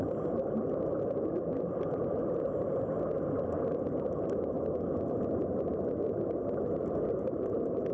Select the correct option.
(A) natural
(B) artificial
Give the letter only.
A